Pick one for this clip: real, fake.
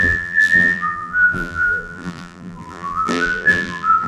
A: fake